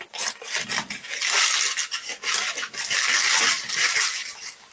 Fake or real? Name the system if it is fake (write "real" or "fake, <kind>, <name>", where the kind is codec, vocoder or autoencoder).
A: real